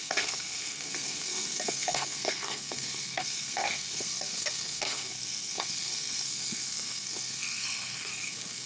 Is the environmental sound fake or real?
fake